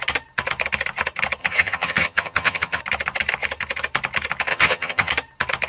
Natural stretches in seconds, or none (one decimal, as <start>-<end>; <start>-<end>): 0.0-1.4; 2.8-4.5; 5.1-5.7